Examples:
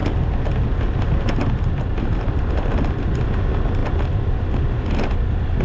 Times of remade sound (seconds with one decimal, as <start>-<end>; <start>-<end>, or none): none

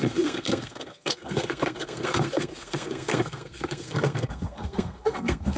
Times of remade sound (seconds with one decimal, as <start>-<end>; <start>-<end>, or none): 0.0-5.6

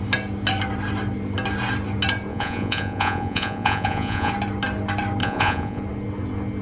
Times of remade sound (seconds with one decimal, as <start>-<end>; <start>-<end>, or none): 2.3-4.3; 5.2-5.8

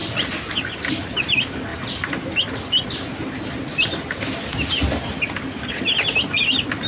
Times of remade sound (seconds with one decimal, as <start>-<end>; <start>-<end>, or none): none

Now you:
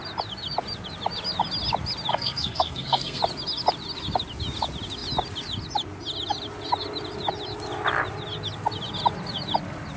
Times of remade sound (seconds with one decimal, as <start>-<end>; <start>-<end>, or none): 2.1-3.2

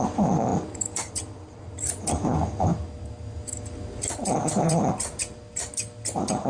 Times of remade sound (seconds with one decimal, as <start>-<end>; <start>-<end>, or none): 4.0-5.1